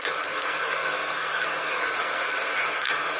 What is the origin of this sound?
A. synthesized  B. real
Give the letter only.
A